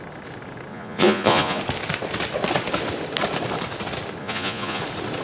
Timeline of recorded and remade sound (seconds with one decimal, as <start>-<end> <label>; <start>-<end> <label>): 0.0-0.7 recorded; 0.7-1.6 remade; 1.6-4.2 recorded; 4.2-4.8 remade; 4.8-5.2 recorded